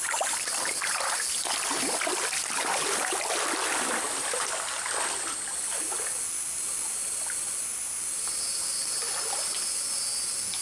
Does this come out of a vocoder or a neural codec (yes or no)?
no